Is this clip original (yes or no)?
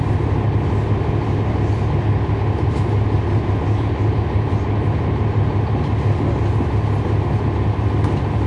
yes